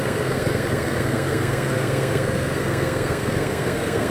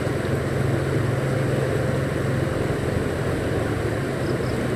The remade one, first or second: first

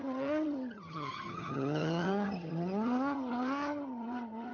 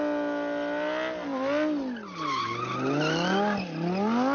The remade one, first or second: first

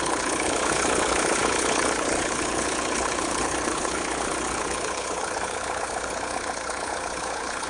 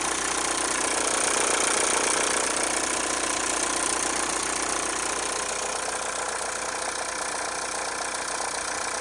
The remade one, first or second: first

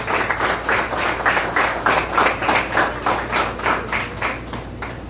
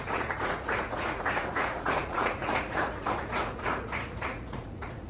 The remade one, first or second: second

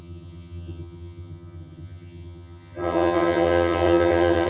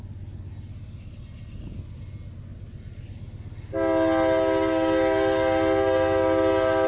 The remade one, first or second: first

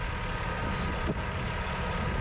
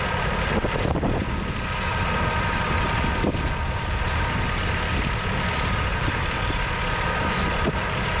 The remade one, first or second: second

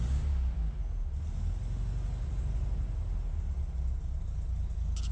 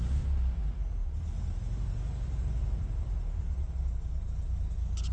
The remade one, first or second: second